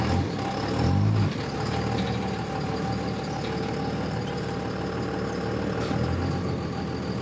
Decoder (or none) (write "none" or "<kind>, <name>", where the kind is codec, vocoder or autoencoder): none